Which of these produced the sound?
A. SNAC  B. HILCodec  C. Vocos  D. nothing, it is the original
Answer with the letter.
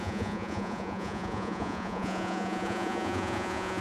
C